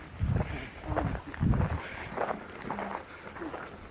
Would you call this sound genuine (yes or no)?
yes